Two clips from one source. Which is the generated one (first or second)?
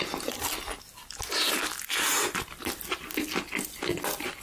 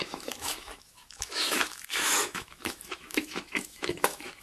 second